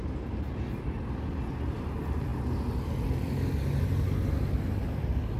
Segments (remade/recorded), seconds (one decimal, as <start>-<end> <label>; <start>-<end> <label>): 0.0-5.4 recorded